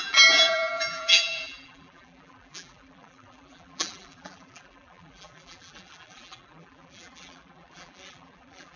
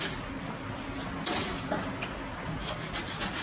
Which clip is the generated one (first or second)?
first